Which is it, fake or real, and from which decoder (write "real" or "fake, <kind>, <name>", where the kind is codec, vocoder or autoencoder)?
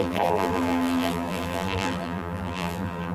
fake, vocoder, BigVGAN v2